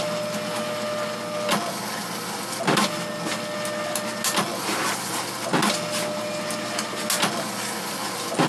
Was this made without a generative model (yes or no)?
yes